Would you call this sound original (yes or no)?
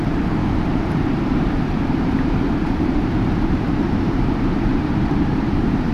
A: no